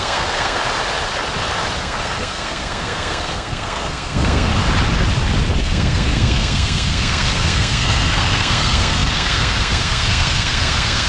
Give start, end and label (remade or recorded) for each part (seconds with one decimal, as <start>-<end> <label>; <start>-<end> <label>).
0.0-0.6 remade; 0.6-1.8 recorded; 1.8-4.5 remade; 4.5-5.6 recorded; 5.6-11.1 remade